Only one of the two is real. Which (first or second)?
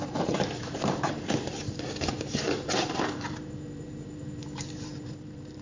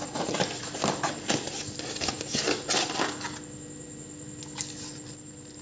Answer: second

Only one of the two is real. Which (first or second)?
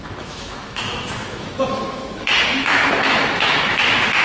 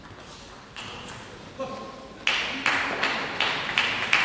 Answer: second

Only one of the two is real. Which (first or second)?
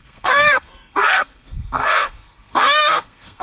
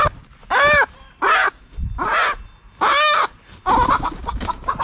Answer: second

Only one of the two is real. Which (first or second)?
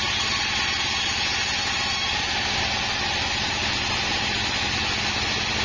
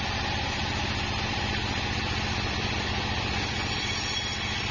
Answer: first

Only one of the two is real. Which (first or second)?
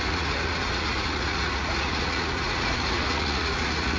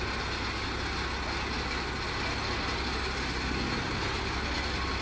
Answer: second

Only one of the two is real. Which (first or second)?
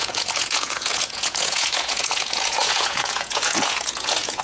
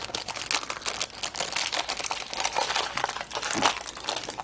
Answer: second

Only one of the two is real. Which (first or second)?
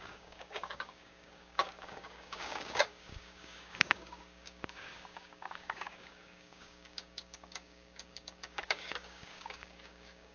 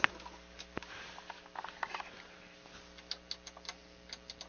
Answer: second